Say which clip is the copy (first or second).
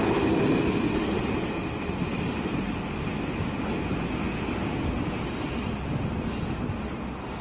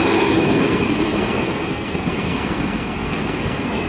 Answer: second